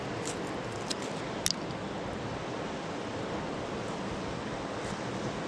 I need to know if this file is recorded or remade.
recorded